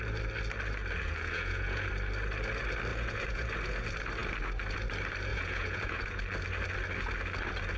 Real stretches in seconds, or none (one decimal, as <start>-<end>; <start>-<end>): 0.0-1.0; 1.9-2.9; 3.5-5.3; 6.2-7.8